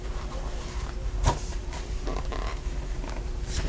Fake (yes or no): yes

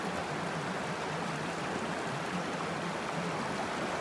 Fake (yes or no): no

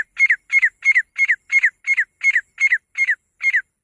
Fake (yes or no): no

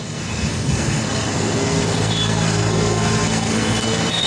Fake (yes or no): yes